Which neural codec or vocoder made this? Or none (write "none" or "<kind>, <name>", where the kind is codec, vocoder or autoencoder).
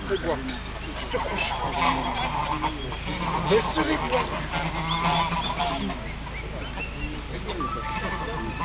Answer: none